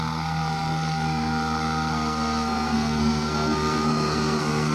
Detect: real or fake fake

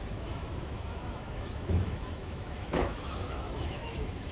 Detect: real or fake fake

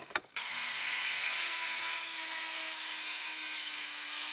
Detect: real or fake fake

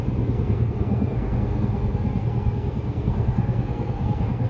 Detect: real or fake fake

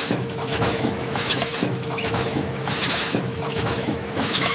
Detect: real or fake fake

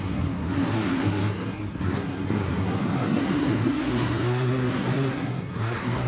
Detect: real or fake fake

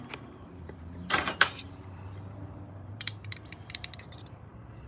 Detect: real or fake fake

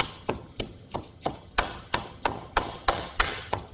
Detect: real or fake fake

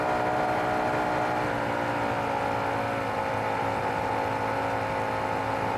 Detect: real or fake real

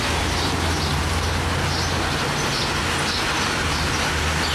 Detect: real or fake real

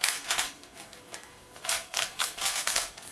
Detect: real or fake fake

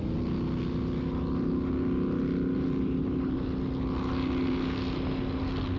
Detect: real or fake real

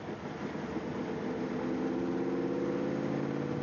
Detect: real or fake real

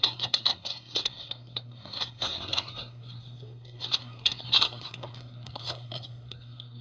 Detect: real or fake fake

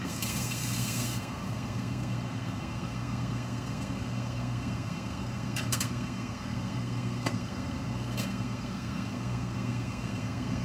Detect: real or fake fake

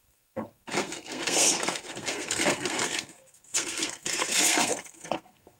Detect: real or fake fake